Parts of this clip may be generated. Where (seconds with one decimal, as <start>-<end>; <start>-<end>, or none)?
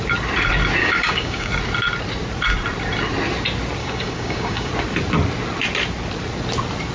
0.8-1.5; 3.8-4.7